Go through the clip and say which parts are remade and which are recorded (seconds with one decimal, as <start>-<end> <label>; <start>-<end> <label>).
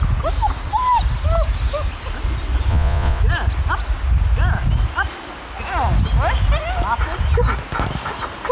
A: 0.0-2.7 recorded; 2.7-3.2 remade; 3.2-8.5 recorded